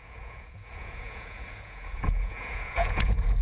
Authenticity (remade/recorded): remade